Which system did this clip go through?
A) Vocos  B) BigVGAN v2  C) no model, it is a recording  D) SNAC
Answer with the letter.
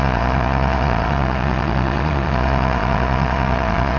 A